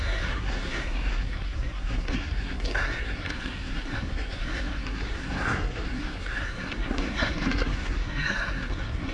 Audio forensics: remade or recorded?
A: remade